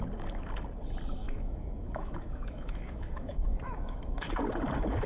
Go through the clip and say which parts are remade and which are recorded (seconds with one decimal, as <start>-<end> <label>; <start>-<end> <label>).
0.0-1.2 recorded; 1.2-4.3 remade; 4.3-5.1 recorded